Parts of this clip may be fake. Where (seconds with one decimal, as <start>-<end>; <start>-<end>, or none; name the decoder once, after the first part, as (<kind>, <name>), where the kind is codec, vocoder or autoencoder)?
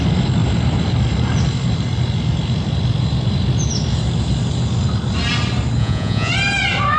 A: 5.8-6.3 (vocoder, Vocos)